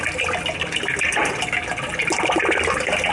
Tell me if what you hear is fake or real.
real